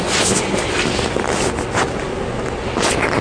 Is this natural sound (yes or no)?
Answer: yes